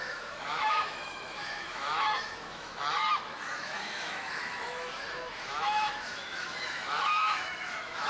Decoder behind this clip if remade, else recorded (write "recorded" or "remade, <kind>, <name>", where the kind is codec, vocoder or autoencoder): remade, autoencoder, DAC-VAE